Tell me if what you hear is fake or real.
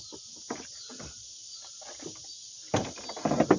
real